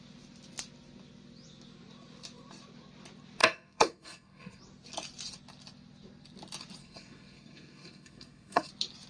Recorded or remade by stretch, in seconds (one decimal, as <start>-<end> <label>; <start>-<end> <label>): 0.0-3.4 recorded; 3.4-4.6 remade; 4.6-6.8 recorded; 6.8-8.7 remade; 8.7-9.1 recorded